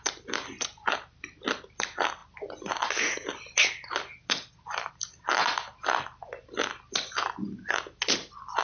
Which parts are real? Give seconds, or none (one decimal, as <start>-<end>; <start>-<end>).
0.0-8.6